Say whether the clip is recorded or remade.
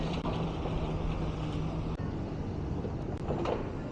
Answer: remade